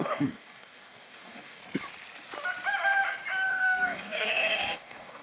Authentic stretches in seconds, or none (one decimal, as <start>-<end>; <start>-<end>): 1.6-3.5